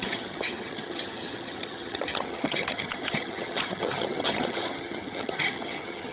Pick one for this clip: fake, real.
fake